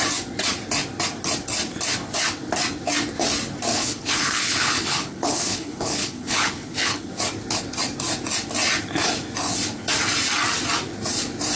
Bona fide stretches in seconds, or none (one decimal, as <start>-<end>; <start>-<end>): 0.0-3.7; 7.1-11.6